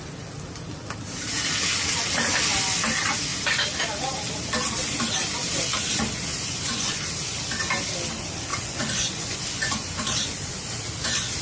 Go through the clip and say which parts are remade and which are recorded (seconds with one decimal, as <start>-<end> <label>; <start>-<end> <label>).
0.0-6.3 recorded; 6.3-7.0 remade; 7.0-8.5 recorded; 8.5-10.6 remade; 10.6-11.4 recorded